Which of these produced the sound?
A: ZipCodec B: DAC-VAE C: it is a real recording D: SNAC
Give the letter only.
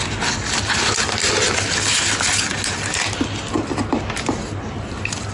C